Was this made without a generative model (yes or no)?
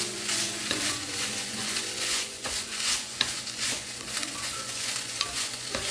no